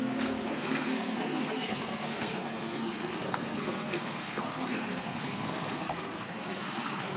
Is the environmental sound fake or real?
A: fake